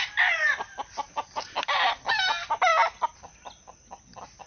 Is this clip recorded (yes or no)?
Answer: yes